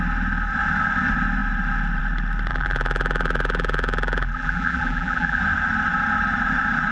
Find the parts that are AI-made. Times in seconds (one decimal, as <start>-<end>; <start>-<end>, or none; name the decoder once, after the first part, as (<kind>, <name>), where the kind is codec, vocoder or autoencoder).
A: 2.5-5.4 (vocoder, BigVGAN v2)